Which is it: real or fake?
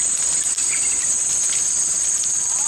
real